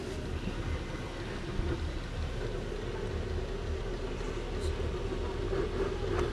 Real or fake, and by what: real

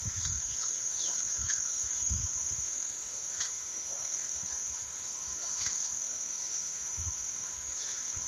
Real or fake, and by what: fake, autoencoder, DAC-VAE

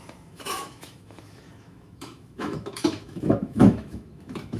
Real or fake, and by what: fake, autoencoder, DAC-VAE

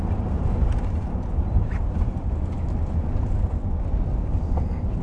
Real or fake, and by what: real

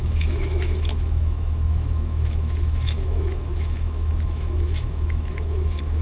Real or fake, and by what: fake, autoencoder, DAC-VAE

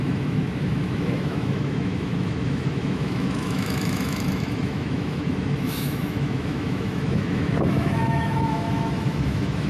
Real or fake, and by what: fake, autoencoder, DAC-VAE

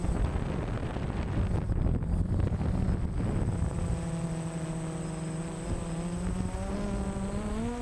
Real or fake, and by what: real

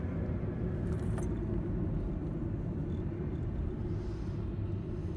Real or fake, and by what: real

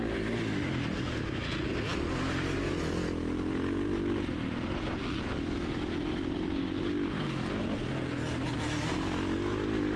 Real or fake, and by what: real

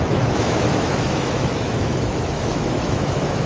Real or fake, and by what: fake, autoencoder, DAC-VAE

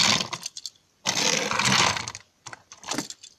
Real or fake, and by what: real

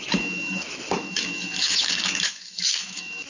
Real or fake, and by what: fake, autoencoder, DAC-VAE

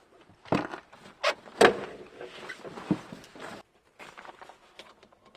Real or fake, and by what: real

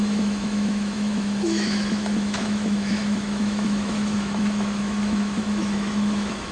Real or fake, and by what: fake, autoencoder, DAC-VAE